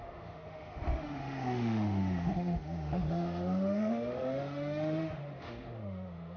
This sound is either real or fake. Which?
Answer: fake